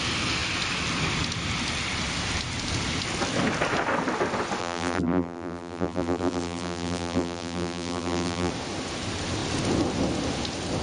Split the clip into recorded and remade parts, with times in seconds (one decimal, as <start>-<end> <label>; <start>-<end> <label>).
0.0-4.6 recorded; 4.6-8.5 remade; 8.5-10.8 recorded